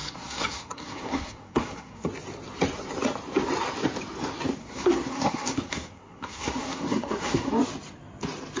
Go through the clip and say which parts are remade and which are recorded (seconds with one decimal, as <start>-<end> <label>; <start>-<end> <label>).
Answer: 0.0-2.1 remade; 2.1-4.6 recorded; 4.6-7.5 remade; 7.5-8.6 recorded